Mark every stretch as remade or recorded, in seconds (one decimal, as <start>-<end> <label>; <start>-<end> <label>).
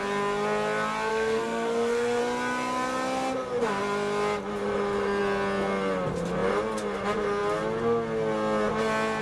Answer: 0.0-1.1 recorded; 1.1-2.2 remade; 2.2-9.2 recorded